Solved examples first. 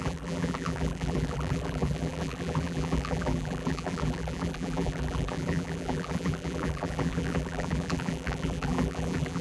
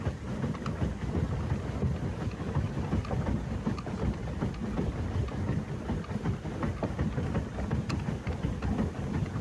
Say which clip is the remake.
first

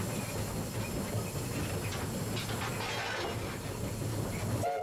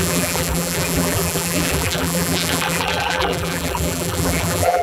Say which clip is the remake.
second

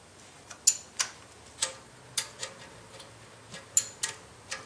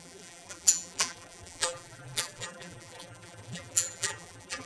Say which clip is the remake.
second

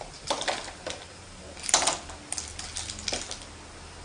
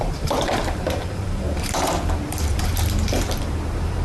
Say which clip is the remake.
second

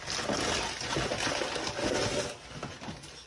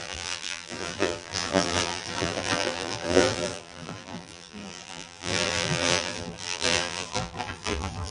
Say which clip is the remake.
second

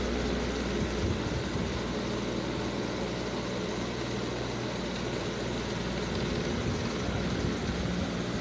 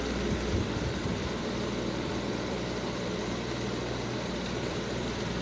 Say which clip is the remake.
second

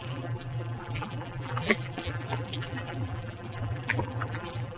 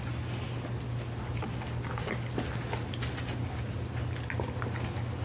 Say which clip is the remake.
first